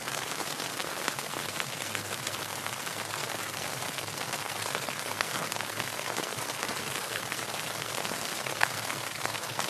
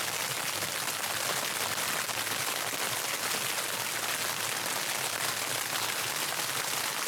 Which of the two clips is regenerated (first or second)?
first